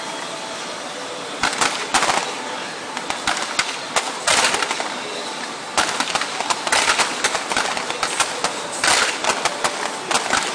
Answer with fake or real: real